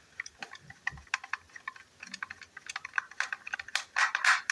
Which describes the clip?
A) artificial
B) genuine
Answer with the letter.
B